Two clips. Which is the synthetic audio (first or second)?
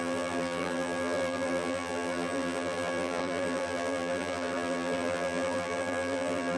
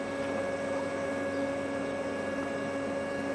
first